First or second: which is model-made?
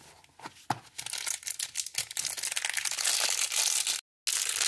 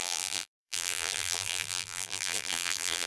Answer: second